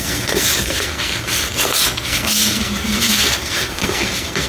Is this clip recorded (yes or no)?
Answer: no